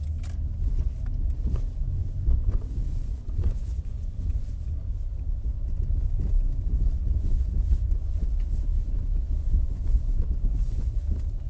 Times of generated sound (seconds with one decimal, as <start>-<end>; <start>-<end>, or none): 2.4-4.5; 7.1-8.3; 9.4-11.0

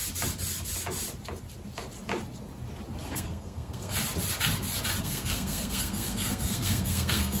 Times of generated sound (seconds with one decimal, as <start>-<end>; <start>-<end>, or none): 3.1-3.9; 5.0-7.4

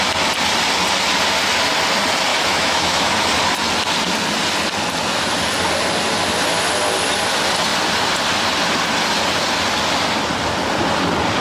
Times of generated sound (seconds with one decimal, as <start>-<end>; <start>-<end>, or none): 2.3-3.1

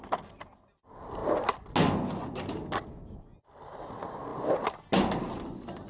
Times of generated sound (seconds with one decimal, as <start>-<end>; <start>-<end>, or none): none